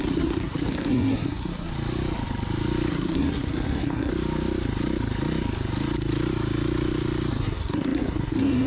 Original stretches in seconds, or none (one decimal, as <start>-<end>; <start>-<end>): 1.7-2.9; 4.1-7.4